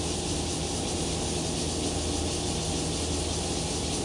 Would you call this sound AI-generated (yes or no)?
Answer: no